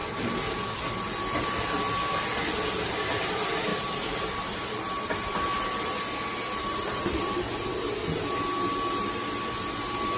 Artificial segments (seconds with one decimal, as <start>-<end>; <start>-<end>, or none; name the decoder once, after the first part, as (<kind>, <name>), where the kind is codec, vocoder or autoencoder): 3.7-4.4 (vocoder, BigVGAN v2); 6.6-7.3